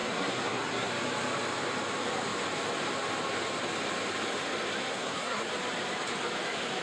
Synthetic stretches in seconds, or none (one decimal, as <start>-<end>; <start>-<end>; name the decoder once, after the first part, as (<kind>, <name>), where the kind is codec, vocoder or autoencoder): 0.0-0.9 (codec, SNAC); 4.9-5.5